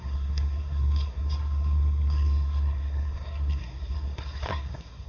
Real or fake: fake